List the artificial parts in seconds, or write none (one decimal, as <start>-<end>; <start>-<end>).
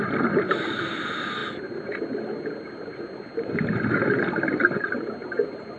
none